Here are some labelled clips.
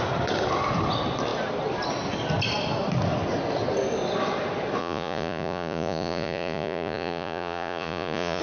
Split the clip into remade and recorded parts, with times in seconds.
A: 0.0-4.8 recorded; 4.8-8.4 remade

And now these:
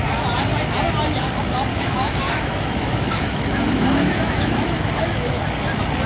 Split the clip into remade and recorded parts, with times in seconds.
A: 0.0-1.7 recorded; 1.7-5.4 remade; 5.4-6.1 recorded

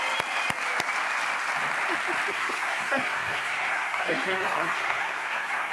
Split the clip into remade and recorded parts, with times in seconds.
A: 0.0-2.3 recorded; 2.3-5.7 remade